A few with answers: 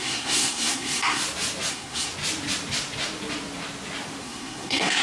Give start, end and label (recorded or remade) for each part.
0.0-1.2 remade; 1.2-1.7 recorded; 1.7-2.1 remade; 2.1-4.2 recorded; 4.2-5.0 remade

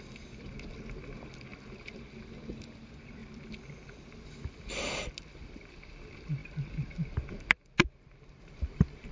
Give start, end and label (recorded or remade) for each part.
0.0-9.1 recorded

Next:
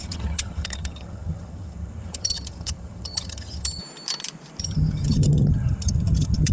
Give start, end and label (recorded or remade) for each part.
0.0-3.8 remade; 3.8-4.6 recorded; 4.6-6.5 remade

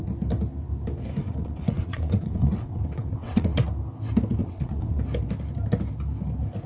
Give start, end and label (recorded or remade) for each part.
0.0-1.2 recorded; 1.2-3.6 remade; 3.6-4.4 recorded; 4.4-5.0 remade; 5.0-6.7 recorded